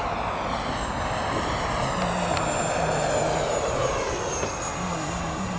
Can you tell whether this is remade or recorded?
recorded